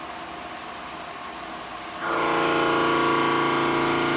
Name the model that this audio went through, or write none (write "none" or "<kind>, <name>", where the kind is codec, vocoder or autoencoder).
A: none